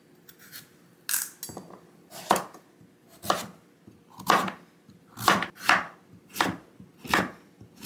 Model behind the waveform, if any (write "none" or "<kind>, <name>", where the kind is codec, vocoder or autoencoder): none